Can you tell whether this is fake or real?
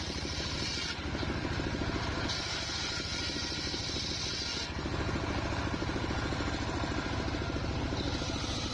real